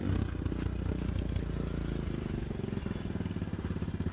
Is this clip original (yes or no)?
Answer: yes